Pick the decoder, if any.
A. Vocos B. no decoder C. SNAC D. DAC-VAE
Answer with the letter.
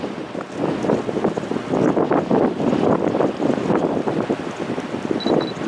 B